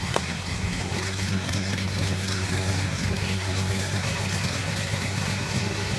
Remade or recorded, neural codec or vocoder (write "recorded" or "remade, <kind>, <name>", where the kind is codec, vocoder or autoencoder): remade, codec, SNAC